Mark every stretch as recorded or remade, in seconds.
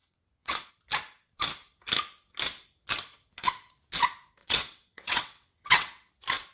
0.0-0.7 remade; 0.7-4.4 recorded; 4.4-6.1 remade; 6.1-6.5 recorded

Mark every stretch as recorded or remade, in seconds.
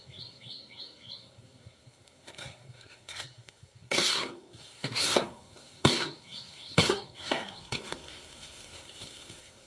0.0-9.7 remade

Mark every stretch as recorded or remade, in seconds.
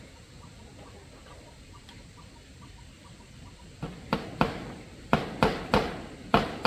0.0-1.2 recorded; 1.2-5.2 remade; 5.2-6.7 recorded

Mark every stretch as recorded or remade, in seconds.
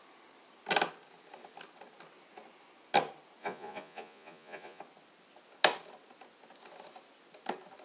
0.0-3.4 recorded; 3.4-4.8 remade; 4.8-7.8 recorded